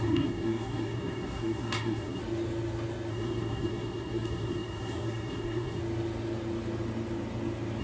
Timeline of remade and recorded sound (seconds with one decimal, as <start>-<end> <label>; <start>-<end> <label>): 0.0-2.2 remade; 2.2-3.1 recorded; 3.1-5.8 remade; 5.8-7.8 recorded